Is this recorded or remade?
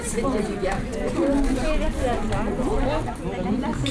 recorded